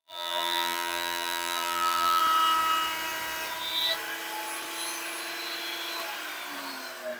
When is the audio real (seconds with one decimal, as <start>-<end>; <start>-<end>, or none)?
2.2-7.2